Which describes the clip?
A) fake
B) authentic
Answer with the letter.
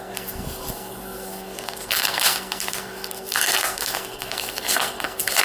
A